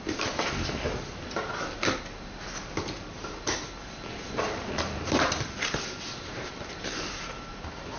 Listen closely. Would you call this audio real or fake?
real